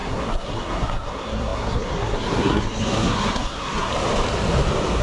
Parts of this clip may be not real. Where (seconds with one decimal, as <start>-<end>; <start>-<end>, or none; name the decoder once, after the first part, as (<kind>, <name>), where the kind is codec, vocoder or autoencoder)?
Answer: 0.0-3.9 (codec, SNAC)